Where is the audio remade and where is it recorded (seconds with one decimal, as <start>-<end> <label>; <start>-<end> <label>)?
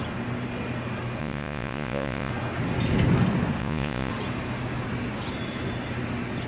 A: 0.0-1.2 recorded; 1.2-2.3 remade; 2.3-3.6 recorded; 3.6-4.1 remade; 4.1-6.5 recorded